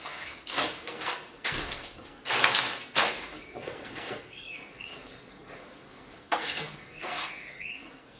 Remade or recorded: remade